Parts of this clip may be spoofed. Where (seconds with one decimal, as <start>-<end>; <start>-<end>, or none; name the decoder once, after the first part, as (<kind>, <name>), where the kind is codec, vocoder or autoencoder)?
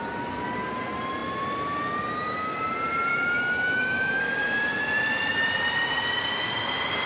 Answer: 3.1-4.2 (autoencoder, DAC-VAE)